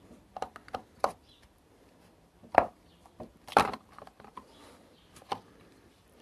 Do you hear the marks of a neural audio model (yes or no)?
yes